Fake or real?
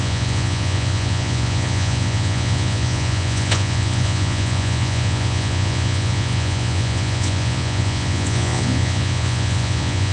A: fake